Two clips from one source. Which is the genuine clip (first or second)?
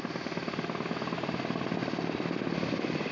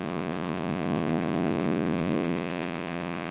first